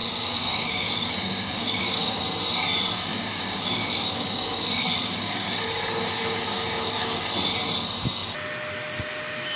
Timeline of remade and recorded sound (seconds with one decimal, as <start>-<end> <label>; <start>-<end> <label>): 0.0-2.2 remade; 2.2-3.1 recorded; 3.1-7.3 remade; 7.3-9.6 recorded